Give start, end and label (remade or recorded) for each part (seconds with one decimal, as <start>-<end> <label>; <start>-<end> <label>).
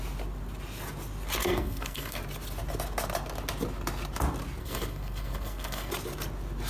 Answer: 0.0-1.4 recorded; 1.4-2.2 remade; 2.2-4.6 recorded; 4.6-5.9 remade; 5.9-6.7 recorded